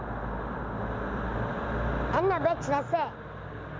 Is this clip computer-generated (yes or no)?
no